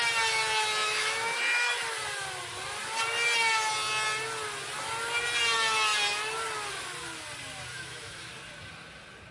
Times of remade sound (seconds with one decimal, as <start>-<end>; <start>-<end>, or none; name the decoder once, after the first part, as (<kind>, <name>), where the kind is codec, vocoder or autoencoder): 0.8-1.7 (autoencoder, DAC-VAE); 7.7-8.3